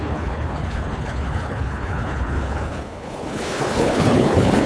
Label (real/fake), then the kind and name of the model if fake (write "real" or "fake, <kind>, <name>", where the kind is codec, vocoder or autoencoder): fake, codec, HILCodec